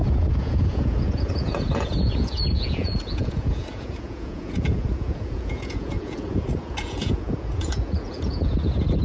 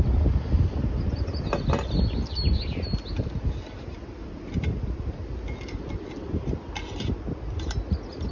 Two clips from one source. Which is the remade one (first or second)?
first